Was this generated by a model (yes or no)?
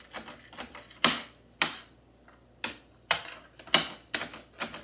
no